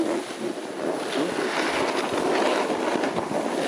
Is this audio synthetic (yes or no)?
no